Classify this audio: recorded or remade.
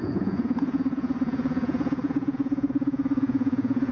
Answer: remade